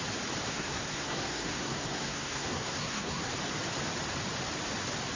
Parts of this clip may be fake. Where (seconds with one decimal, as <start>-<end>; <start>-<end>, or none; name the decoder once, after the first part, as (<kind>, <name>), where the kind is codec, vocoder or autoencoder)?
0.5-3.2 (codec, SNAC)